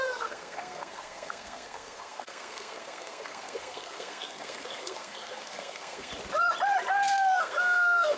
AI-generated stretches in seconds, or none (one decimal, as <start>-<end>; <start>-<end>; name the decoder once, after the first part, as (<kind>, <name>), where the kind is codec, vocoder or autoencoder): 0.0-6.1 (codec, SNAC); 6.9-8.2